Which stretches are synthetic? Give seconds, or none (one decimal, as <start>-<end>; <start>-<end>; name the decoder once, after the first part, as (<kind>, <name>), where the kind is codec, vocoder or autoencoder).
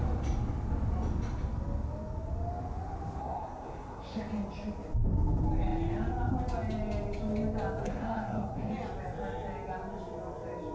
3.2-4.2 (codec, SNAC); 7.8-8.7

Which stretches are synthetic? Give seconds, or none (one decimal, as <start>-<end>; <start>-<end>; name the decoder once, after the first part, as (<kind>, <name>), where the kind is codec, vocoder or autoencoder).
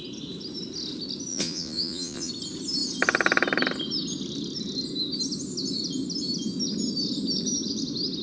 1.3-2.3 (vocoder, Vocos)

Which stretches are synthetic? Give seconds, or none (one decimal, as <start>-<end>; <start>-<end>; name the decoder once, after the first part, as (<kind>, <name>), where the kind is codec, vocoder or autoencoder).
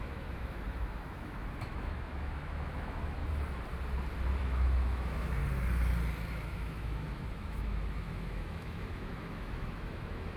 0.0-3.2 (autoencoder, DAC-VAE); 4.4-5.4; 6.3-10.4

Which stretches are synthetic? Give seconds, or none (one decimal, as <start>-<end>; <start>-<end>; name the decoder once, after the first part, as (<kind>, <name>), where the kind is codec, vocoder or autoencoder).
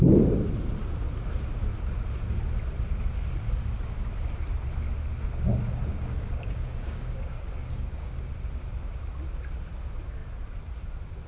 5.9-8.3 (codec, DAC)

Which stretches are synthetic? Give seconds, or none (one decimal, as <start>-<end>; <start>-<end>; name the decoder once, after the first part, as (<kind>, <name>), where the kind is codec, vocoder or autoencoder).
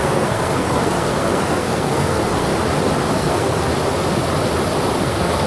0.0-2.5 (codec, SNAC); 3.1-3.7; 5.0-5.5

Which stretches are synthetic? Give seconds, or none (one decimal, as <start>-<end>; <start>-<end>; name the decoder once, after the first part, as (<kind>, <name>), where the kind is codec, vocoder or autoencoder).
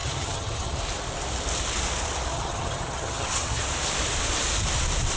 0.0-0.8 (vocoder, HiFi-GAN); 2.3-3.6